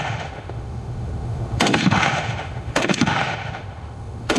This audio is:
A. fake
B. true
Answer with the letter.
A